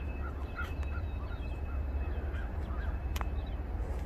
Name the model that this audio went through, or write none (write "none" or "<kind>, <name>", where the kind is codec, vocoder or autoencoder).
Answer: none